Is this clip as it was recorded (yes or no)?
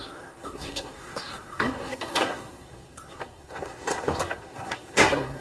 no